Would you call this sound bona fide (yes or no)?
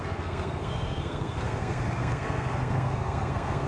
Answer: no